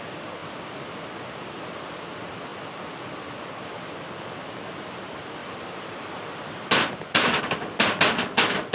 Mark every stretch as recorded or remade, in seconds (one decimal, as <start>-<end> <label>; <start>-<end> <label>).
0.0-5.4 recorded; 5.4-7.4 remade; 7.4-8.7 recorded